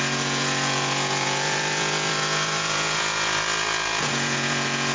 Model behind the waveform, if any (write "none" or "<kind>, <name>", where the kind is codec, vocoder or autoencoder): vocoder, Vocos